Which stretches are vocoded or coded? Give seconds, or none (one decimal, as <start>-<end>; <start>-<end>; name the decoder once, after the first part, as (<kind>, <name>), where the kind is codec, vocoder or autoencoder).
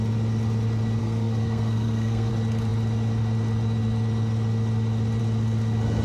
1.0-2.3 (codec, SNAC)